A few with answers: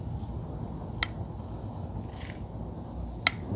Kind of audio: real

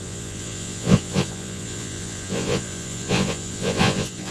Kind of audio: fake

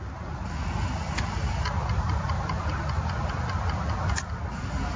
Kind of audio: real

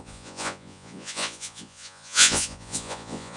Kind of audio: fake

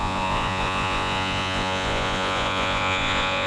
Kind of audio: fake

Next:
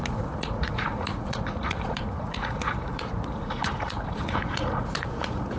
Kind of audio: fake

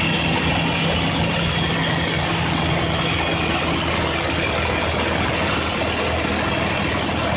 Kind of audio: real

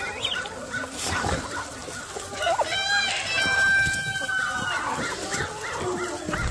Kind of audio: real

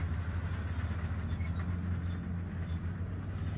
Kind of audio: real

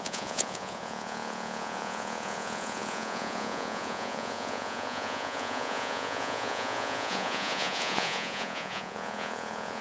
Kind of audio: fake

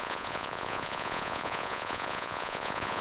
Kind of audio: fake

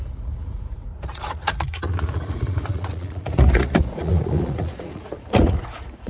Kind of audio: fake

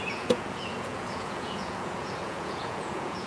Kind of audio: fake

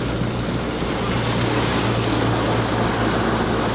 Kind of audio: real